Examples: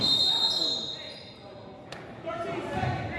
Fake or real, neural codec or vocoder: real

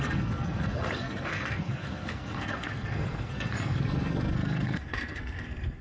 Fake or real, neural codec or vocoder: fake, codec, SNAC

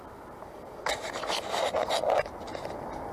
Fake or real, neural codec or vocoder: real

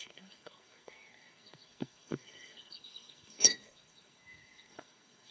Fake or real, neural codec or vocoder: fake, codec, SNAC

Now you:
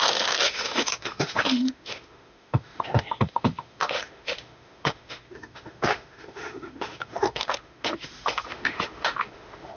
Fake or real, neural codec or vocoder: fake, autoencoder, DAC-VAE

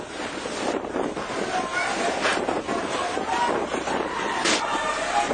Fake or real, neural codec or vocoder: real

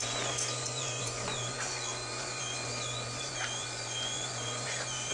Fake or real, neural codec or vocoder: fake, vocoder, Vocos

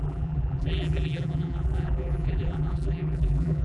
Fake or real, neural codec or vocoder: fake, vocoder, BigVGAN v2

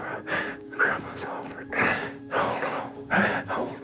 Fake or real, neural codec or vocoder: fake, codec, DAC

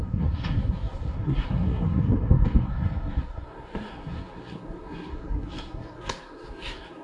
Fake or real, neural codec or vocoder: fake, codec, SNAC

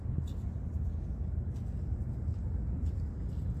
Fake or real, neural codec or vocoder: real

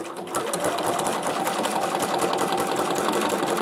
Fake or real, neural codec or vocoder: real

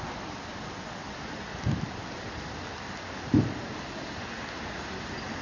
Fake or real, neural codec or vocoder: real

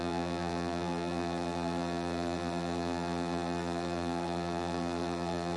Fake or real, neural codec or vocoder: fake, vocoder, BigVGAN v2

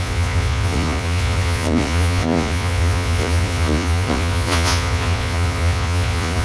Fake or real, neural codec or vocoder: fake, vocoder, Vocos